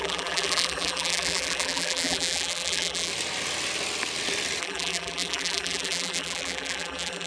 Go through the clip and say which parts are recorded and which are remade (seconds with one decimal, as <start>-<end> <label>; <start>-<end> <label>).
0.0-3.1 remade; 3.1-4.6 recorded; 4.6-7.3 remade